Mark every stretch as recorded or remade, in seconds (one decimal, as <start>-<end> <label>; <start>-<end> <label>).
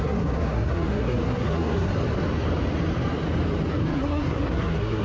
0.0-1.9 remade; 1.9-3.7 recorded; 3.7-5.0 remade